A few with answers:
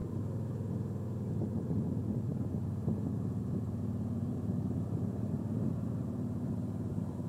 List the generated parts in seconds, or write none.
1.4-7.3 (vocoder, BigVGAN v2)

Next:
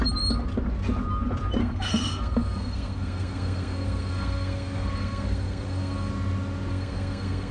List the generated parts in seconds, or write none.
1.6-6.1 (codec, SNAC); 6.7-7.5

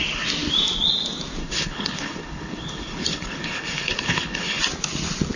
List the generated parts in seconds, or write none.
1.4-4.6 (codec, HILCodec)

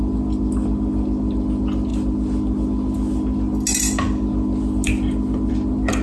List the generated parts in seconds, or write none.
none

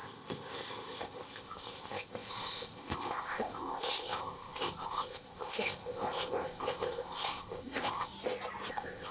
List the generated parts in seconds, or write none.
0.0-8.1 (codec, ZipCodec); 8.7-9.1

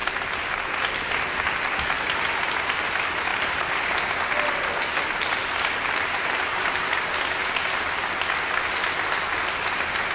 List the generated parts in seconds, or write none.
0.0-0.7 (vocoder, BigVGAN v2); 3.3-3.8; 5.4-6.9